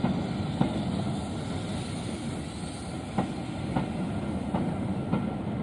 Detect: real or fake real